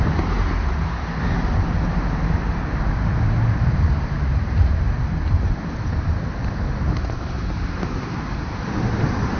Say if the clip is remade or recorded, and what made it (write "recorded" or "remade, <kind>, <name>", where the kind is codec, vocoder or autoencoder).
remade, vocoder, BigVGAN v2